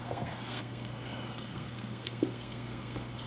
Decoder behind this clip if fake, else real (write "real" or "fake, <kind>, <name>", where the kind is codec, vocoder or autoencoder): fake, codec, SNAC